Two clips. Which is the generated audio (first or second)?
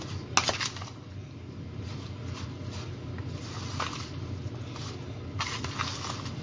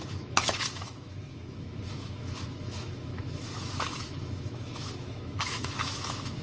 second